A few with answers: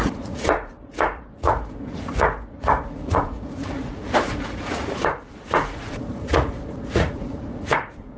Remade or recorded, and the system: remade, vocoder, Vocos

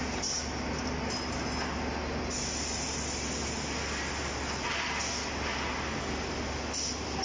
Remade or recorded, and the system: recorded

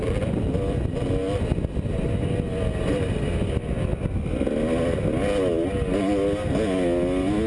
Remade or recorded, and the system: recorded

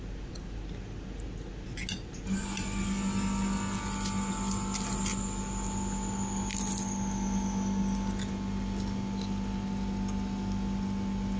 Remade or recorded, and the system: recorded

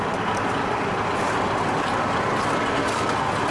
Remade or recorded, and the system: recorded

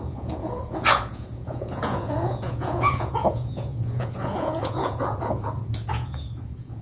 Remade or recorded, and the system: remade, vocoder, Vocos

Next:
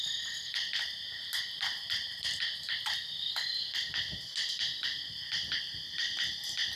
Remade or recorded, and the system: recorded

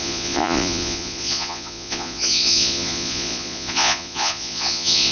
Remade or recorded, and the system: remade, vocoder, Vocos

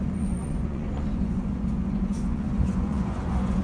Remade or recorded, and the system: remade, vocoder, Vocos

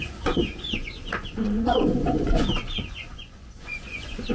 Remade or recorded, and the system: remade, vocoder, Vocos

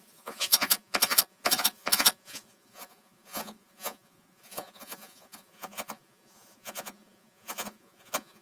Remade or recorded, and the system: remade, vocoder, Vocos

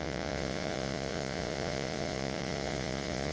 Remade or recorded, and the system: remade, vocoder, Vocos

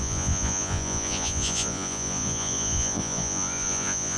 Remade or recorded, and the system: remade, vocoder, Vocos